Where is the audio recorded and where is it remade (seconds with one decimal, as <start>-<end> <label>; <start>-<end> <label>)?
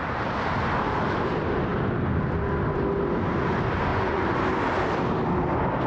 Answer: 0.0-3.9 recorded; 3.9-4.4 remade; 4.4-5.9 recorded